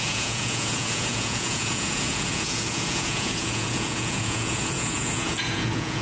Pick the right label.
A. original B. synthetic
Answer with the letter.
B